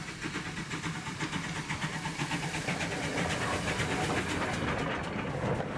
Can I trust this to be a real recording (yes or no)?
yes